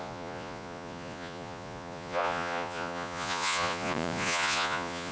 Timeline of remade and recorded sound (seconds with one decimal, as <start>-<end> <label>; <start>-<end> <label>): 0.0-5.1 remade